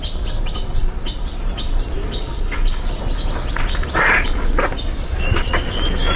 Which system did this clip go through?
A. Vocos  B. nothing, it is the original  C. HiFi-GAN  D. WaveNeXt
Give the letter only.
B